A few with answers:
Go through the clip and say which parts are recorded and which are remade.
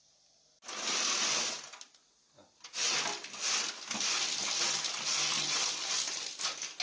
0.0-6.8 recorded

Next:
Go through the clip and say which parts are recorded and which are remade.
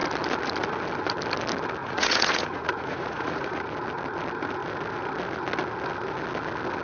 0.0-1.8 recorded; 1.8-3.6 remade; 3.6-6.8 recorded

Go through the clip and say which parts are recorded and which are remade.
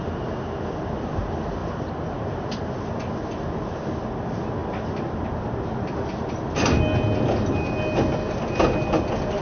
0.0-9.4 recorded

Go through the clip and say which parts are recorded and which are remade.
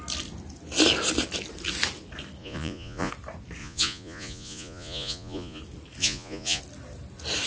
0.0-2.4 recorded; 2.4-3.1 remade; 3.1-3.6 recorded; 3.6-5.6 remade; 5.6-6.0 recorded; 6.0-6.6 remade; 6.6-7.5 recorded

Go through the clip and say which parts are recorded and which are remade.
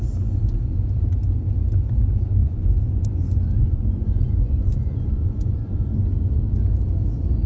0.0-2.4 recorded; 2.4-6.4 remade; 6.4-7.5 recorded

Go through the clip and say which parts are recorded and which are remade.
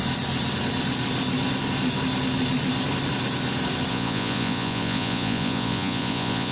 0.0-3.9 recorded; 3.9-6.5 remade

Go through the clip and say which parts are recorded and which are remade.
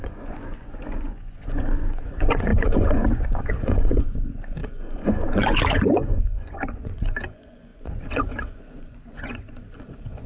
0.0-10.3 remade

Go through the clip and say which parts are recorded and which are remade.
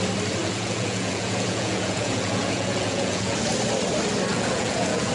0.0-0.4 recorded; 0.4-3.5 remade; 3.5-4.3 recorded; 4.3-5.1 remade